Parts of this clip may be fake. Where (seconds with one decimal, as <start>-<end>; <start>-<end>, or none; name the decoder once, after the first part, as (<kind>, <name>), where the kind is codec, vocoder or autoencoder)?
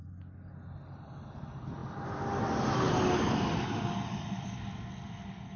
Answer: none